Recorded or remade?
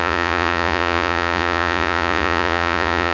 remade